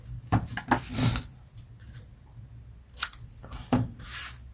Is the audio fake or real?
real